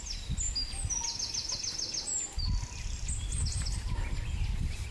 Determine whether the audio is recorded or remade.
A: recorded